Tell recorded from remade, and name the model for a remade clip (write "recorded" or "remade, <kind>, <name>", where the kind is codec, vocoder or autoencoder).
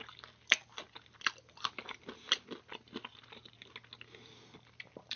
recorded